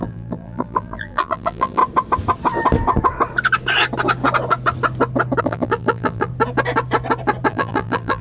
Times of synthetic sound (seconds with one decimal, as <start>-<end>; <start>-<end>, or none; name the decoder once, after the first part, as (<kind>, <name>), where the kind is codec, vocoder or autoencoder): 0.0-1.8 (vocoder, BigVGAN v2); 5.4-6.3; 7.5-8.2